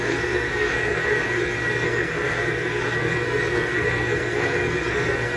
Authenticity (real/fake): fake